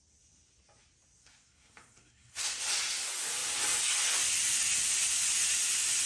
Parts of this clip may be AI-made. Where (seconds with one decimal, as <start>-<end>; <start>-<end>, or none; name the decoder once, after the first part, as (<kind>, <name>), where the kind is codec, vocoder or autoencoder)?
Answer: 1.2-2.6 (codec, SNAC)